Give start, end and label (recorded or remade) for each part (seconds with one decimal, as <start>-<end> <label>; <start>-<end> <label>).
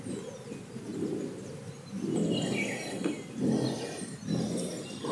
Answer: 0.0-5.1 recorded